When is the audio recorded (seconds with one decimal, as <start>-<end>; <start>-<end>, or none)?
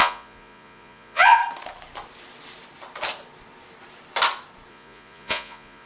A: 1.4-4.7